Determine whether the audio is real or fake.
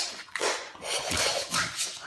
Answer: fake